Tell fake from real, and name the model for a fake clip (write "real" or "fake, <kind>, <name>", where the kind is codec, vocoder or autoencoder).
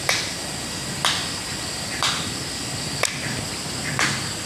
real